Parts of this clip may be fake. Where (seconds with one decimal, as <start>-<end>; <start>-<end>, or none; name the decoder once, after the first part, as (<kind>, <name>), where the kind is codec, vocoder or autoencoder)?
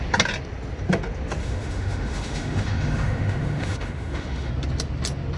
1.4-4.5 (autoencoder, DAC-VAE)